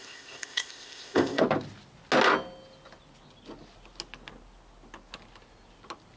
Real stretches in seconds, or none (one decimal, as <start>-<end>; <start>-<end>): 1.4-6.2